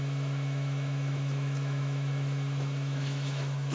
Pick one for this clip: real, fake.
fake